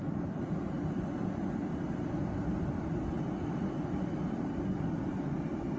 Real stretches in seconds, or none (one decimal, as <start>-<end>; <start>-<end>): 0.0-5.8